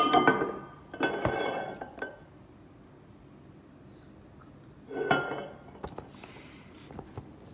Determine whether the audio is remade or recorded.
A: recorded